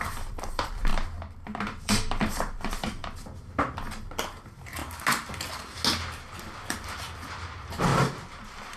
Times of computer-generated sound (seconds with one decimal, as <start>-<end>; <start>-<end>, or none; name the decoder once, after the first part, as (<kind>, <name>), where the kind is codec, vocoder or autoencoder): 0.0-0.9 (vocoder, BigVGAN v2); 1.8-4.8; 6.4-8.8